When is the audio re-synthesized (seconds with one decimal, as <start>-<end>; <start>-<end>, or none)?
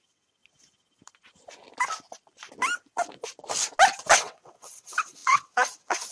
0.0-0.4; 4.1-6.1